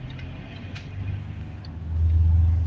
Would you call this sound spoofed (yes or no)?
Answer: no